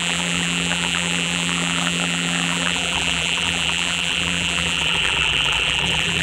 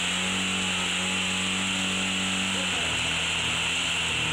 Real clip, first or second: second